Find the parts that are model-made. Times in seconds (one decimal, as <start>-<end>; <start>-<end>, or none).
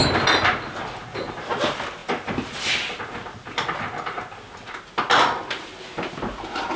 none